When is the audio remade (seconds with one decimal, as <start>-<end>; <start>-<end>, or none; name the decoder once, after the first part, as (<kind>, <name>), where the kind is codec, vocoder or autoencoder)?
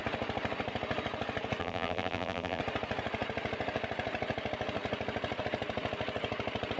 1.6-2.6 (vocoder, BigVGAN v2)